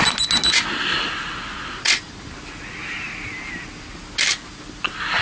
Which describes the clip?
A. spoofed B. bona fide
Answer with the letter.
B